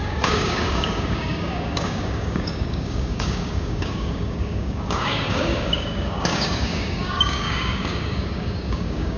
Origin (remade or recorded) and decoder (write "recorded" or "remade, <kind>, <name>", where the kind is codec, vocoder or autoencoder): remade, codec, DAC